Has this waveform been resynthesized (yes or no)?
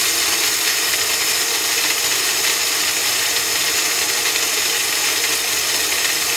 no